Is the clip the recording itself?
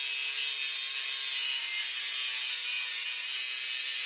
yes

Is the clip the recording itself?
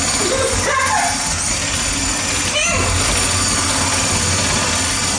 yes